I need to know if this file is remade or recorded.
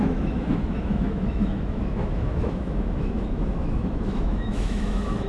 remade